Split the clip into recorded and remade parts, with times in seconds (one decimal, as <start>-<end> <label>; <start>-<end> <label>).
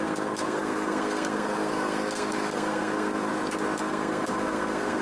0.0-3.3 remade; 3.3-3.8 recorded; 3.8-5.0 remade